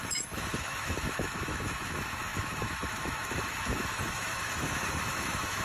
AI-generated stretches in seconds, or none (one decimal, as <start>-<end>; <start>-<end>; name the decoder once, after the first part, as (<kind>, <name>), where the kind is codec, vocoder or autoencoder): 0.0-5.6 (autoencoder, DAC-VAE)